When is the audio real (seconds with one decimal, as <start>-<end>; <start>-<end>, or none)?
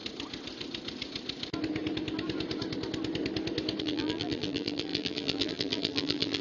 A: 0.0-3.8